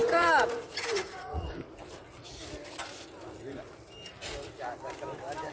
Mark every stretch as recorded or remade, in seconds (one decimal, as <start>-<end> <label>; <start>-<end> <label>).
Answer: 0.0-1.5 remade; 1.5-5.5 recorded